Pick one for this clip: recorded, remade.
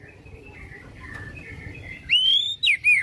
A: recorded